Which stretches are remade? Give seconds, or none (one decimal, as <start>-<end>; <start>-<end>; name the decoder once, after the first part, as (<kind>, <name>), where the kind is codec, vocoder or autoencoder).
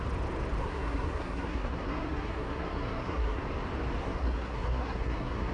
0.6-3.4 (codec, SNAC); 4.0-5.5